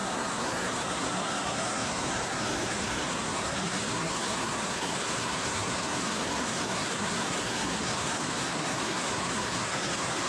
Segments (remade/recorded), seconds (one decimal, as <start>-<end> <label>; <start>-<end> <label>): 0.0-10.3 remade